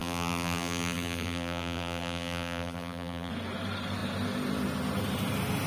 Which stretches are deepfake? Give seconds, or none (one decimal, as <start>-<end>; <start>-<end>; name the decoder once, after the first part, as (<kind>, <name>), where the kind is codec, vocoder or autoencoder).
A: 0.0-3.3 (vocoder, BigVGAN v2)